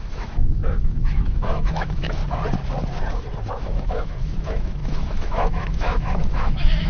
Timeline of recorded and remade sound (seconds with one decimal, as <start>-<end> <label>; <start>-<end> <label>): 0.0-2.2 remade; 2.2-3.5 recorded; 3.5-6.9 remade